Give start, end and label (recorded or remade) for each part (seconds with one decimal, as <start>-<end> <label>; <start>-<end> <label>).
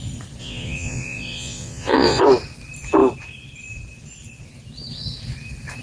0.0-0.4 recorded; 0.4-2.2 remade; 2.2-5.8 recorded